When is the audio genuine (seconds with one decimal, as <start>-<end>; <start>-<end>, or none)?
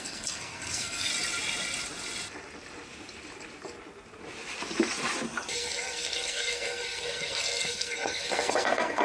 1.1-5.5